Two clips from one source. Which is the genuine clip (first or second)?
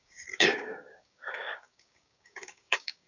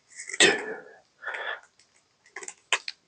second